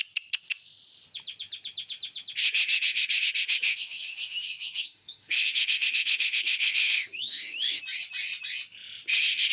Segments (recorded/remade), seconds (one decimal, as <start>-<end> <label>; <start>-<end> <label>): 0.0-3.7 recorded; 3.7-7.8 remade; 7.8-9.5 recorded